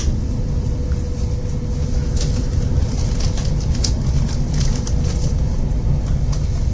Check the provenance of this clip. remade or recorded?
recorded